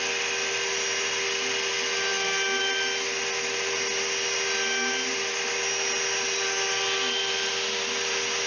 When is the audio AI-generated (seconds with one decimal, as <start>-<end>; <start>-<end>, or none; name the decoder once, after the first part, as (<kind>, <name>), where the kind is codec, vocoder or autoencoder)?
none